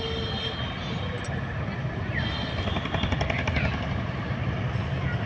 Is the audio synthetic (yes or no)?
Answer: no